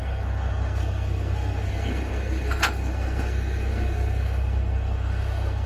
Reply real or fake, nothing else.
fake